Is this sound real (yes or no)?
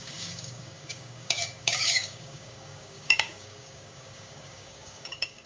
no